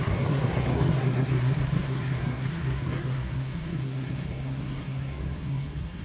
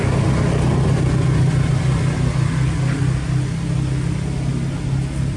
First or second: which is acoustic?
second